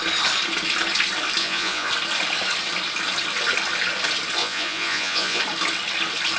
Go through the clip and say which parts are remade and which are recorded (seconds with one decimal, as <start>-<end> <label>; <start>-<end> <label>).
0.0-1.4 recorded; 1.4-1.9 remade; 1.9-4.4 recorded; 4.4-5.4 remade; 5.4-6.4 recorded